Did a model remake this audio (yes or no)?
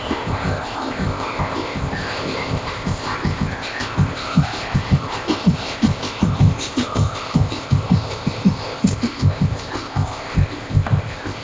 yes